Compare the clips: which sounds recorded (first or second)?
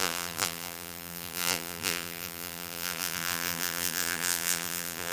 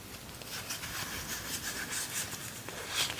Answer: second